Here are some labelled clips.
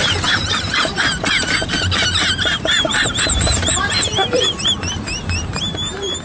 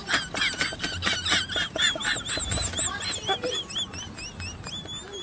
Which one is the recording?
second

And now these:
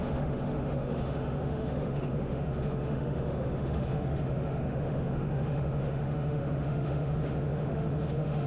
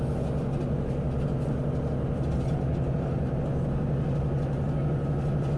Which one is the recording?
second